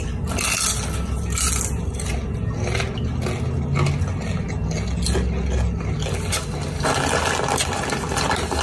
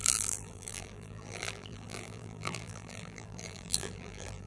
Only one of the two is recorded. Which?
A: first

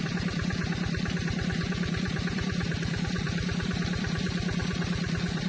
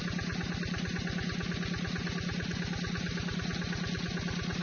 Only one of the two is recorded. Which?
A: second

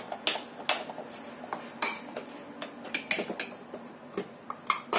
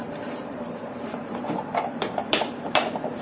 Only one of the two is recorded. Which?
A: first